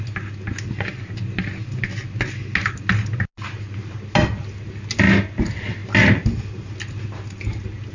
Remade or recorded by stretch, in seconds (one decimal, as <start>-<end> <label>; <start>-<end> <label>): 0.0-7.9 recorded